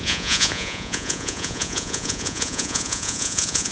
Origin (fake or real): fake